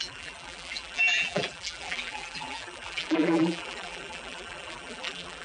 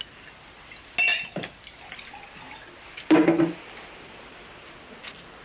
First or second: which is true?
second